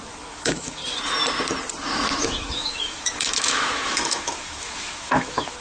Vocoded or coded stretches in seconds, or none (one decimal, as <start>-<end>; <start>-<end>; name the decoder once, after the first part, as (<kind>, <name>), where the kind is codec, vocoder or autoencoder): 0.0-0.8 (autoencoder, DAC-VAE); 2.2-5.6